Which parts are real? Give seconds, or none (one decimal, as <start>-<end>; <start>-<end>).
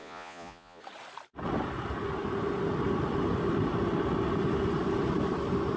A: 0.8-5.8